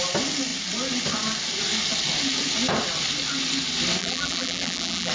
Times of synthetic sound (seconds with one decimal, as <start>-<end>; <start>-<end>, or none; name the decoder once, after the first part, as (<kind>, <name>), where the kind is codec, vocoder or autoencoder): 4.0-5.1 (vocoder, BigVGAN v2)